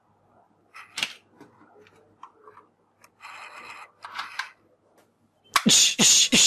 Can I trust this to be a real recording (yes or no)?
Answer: yes